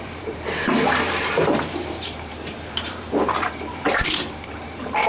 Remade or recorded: remade